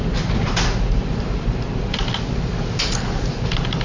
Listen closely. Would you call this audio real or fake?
real